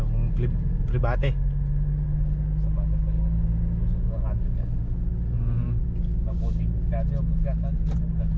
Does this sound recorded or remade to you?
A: recorded